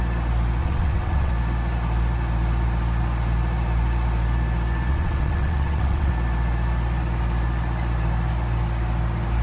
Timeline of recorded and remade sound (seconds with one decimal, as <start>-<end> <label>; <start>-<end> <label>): 0.0-0.6 recorded; 0.6-1.3 remade; 1.3-4.9 recorded; 4.9-6.1 remade; 6.1-9.4 recorded